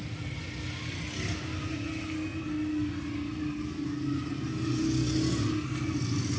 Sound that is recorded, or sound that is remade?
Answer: recorded